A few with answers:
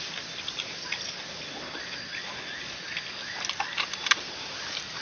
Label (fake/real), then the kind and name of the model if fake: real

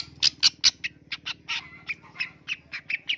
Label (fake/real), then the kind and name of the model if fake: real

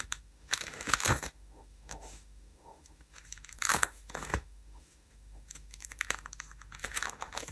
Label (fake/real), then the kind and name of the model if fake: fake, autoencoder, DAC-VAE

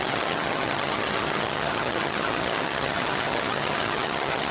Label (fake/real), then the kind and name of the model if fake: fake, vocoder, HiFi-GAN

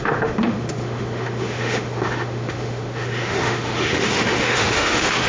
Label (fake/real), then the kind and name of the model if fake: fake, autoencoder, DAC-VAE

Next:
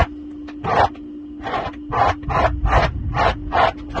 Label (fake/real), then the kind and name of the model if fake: real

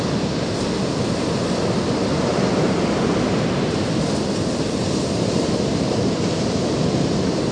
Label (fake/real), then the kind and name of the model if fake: real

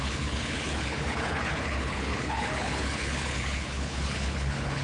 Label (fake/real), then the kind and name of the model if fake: fake, codec, HILCodec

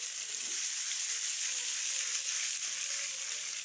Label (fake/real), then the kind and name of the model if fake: real